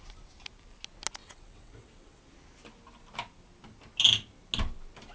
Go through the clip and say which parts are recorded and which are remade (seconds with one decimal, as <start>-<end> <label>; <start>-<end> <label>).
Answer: 0.0-1.2 recorded; 1.2-2.2 remade; 2.2-5.1 recorded